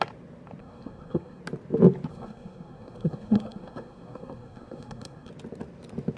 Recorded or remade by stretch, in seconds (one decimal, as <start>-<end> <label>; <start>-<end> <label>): 0.0-0.6 recorded; 0.6-1.4 remade; 1.4-2.1 recorded; 2.1-5.3 remade; 5.3-6.2 recorded